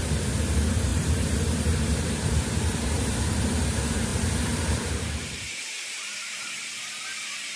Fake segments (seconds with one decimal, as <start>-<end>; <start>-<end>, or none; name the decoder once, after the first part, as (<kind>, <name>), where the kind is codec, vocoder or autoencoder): 0.9-3.0 (vocoder, BigVGAN v2); 4.1-6.6